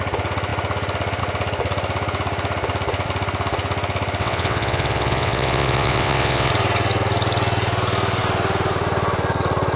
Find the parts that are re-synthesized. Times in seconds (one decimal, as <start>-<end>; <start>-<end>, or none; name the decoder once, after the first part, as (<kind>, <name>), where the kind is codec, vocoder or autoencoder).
4.2-6.5 (vocoder, WaveNeXt)